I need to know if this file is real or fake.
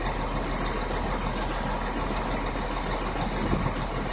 real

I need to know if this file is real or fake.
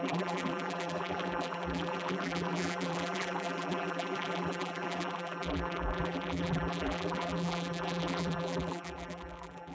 fake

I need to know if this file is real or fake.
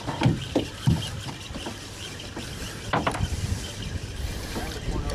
real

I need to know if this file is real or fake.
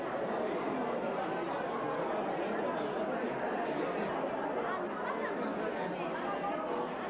real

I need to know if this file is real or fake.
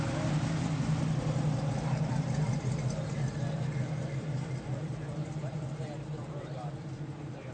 fake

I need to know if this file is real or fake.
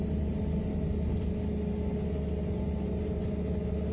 real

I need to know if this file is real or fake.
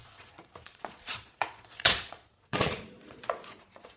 fake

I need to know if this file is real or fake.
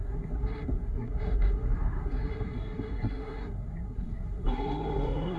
fake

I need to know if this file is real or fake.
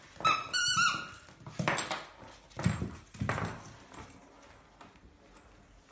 real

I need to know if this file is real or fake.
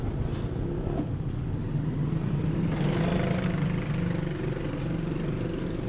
real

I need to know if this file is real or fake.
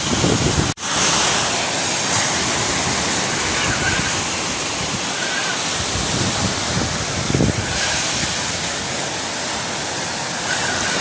real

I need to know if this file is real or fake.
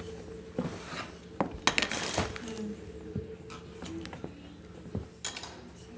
real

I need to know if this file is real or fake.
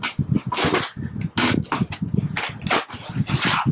real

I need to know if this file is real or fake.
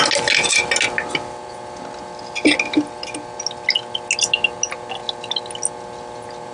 real